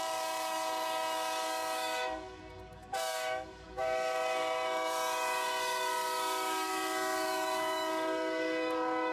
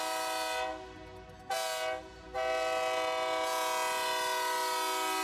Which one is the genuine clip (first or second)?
second